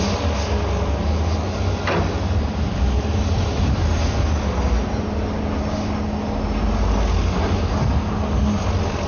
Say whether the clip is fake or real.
real